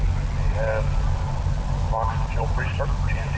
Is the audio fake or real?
real